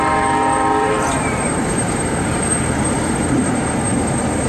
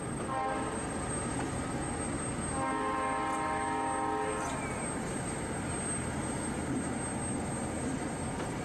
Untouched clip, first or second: second